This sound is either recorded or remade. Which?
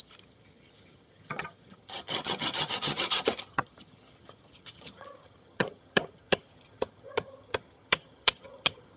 remade